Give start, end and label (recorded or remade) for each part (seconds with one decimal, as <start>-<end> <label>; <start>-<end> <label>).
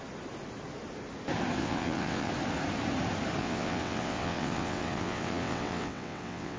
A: 0.0-1.6 recorded; 1.6-2.3 remade; 2.3-3.4 recorded; 3.4-6.6 remade